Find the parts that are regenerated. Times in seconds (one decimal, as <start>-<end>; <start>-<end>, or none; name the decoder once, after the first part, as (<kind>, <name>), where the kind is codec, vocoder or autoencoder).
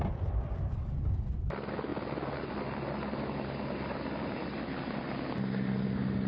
none